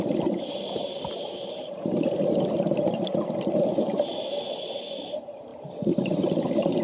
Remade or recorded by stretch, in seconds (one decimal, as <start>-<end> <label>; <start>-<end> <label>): 0.0-6.8 recorded